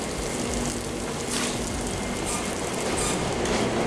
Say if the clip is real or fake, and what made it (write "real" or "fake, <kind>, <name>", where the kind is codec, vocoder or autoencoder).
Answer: real